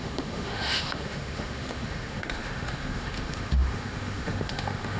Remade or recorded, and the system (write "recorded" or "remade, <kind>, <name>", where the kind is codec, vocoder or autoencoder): remade, autoencoder, DAC-VAE